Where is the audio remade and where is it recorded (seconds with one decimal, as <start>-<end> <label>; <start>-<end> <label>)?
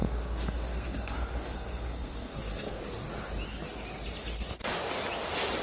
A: 0.0-2.8 remade; 2.8-5.6 recorded